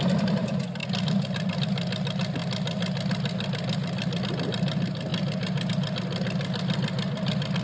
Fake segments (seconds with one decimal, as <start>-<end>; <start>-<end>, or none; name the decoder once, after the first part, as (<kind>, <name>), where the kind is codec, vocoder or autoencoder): none